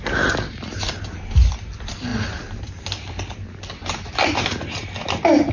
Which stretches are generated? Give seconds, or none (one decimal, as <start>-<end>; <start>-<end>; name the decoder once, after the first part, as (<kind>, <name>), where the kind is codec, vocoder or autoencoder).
none